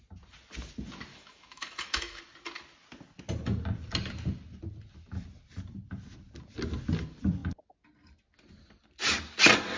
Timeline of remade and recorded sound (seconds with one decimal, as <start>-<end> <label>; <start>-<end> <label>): 0.0-1.1 recorded; 1.1-2.2 remade; 2.2-9.8 recorded